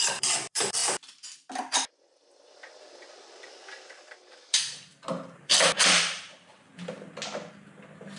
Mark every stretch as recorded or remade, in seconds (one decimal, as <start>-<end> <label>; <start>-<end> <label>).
0.0-0.8 remade; 0.8-4.3 recorded; 4.3-6.7 remade; 6.7-8.2 recorded